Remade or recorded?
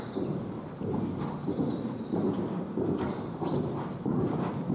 recorded